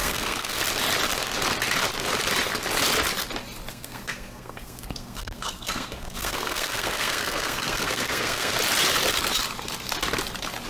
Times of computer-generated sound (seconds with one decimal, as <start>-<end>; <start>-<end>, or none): 0.0-0.6; 3.7-8.5